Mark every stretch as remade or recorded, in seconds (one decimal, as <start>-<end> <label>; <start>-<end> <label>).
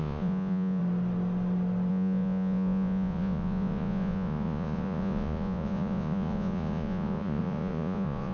0.0-0.8 remade; 0.8-1.9 recorded; 1.9-8.3 remade